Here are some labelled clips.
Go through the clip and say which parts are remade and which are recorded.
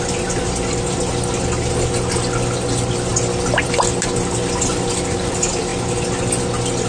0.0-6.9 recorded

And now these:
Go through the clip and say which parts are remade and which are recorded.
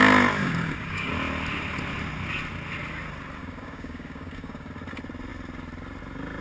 0.0-0.4 recorded; 0.4-1.1 remade; 1.1-3.4 recorded; 3.4-4.7 remade; 4.7-6.4 recorded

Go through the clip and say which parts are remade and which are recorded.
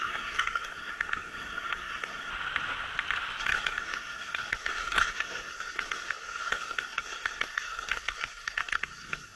0.0-2.3 remade; 2.3-3.4 recorded; 3.4-9.4 remade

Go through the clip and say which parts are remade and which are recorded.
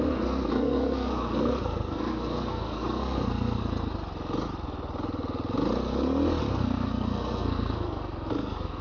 0.0-3.6 remade; 3.6-6.5 recorded; 6.5-8.8 remade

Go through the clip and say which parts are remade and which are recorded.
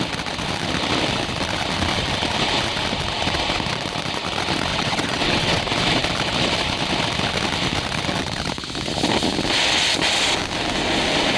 0.0-4.7 recorded; 4.7-5.6 remade; 5.6-11.4 recorded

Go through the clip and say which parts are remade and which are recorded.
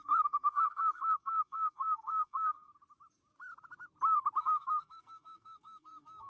0.0-2.7 remade; 2.7-4.4 recorded; 4.4-6.3 remade